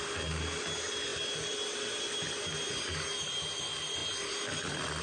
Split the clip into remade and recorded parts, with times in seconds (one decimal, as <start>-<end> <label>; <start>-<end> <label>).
0.0-5.0 recorded